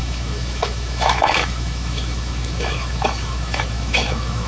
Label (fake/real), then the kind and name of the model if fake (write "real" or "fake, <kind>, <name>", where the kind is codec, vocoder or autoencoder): fake, autoencoder, DAC-VAE